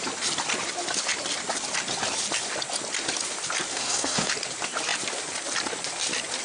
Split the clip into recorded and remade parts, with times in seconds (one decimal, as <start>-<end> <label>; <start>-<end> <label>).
0.0-3.7 recorded; 3.7-4.3 remade; 4.3-6.4 recorded